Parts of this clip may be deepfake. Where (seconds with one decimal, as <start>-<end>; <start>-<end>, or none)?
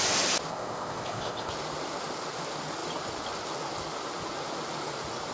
0.5-1.5